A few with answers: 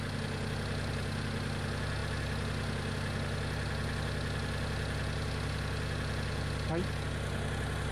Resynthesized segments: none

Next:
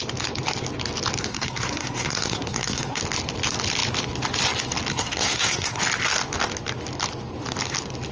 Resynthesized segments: 1.3-3.0 (codec, SNAC); 4.9-5.8

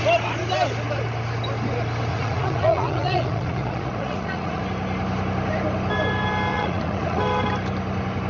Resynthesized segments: 2.1-4.6 (vocoder, Vocos); 6.5-7.2

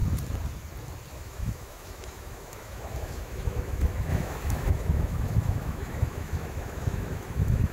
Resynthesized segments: 1.1-7.7 (autoencoder, DAC-VAE)

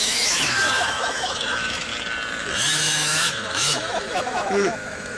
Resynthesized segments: 0.0-1.9 (autoencoder, DAC-VAE); 2.4-5.2

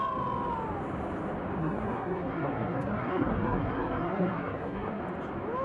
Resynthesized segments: 1.6-5.0 (codec, SNAC)

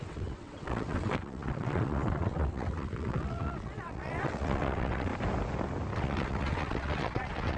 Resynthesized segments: 0.0-5.1 (vocoder, WaveNeXt); 5.9-7.6

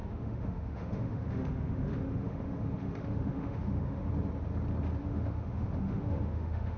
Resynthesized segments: 0.0-4.1 (autoencoder, DAC-VAE); 5.0-6.8